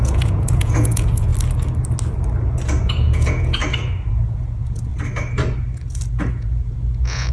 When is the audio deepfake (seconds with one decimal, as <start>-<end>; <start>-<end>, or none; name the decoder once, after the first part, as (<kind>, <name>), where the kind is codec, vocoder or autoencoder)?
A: 0.0-1.3 (vocoder, Vocos); 2.8-3.6; 4.1-4.9; 6.3-7.3